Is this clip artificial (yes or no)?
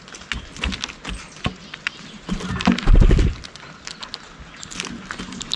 no